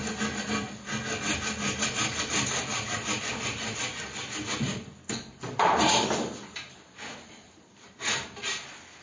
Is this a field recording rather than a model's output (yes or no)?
yes